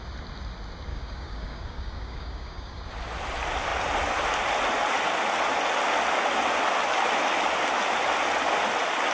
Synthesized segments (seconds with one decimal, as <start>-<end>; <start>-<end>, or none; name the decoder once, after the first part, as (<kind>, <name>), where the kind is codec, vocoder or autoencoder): 0.9-2.8 (codec, DAC)